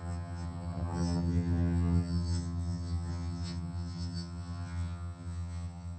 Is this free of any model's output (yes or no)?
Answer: no